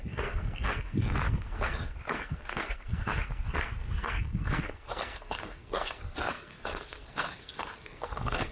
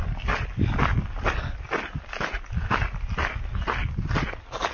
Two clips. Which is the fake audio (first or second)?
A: first